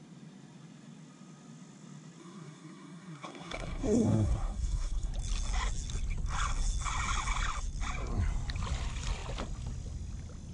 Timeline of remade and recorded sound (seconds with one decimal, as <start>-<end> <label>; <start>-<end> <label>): 0.0-2.2 recorded; 2.2-5.1 remade; 5.1-10.5 recorded